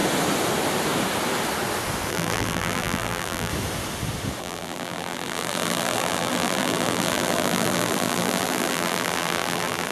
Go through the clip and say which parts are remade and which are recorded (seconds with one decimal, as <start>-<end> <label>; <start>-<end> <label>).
0.0-2.1 recorded; 2.1-3.5 remade; 3.5-4.4 recorded; 4.4-9.9 remade